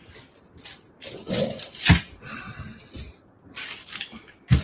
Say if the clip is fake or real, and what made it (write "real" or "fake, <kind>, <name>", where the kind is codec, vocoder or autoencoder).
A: fake, vocoder, BigVGAN v2